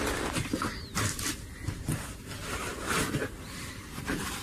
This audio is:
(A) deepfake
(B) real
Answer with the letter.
B